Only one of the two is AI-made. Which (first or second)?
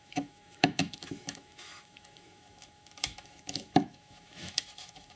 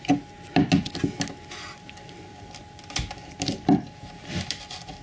first